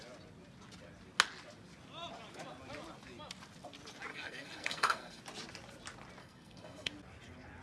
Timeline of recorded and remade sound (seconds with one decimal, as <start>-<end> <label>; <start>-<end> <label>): 0.0-4.1 recorded; 4.1-5.2 remade; 5.2-6.2 recorded; 6.2-6.9 remade; 6.9-7.6 recorded